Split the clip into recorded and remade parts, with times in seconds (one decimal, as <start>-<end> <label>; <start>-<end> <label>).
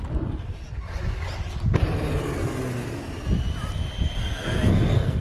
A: 0.0-4.2 recorded; 4.2-5.2 remade